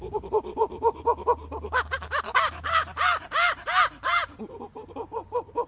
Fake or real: real